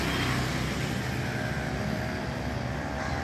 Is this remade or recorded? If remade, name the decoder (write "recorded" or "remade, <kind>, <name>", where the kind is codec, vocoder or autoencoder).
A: recorded